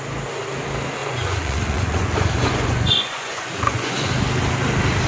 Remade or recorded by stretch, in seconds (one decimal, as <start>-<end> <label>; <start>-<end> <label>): 0.0-1.0 recorded; 1.0-4.1 remade; 4.1-5.1 recorded